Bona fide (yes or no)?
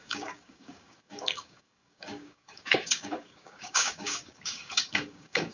no